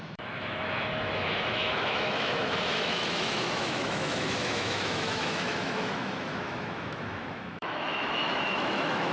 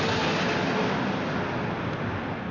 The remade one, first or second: first